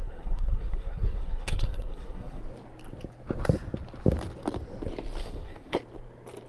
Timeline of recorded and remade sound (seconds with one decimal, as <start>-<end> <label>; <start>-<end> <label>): 0.0-2.4 remade; 2.4-5.2 recorded; 5.2-5.8 remade; 5.8-6.5 recorded